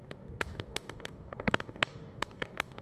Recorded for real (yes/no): no